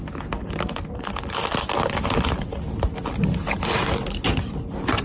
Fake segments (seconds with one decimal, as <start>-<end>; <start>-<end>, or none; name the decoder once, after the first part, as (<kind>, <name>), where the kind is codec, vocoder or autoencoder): none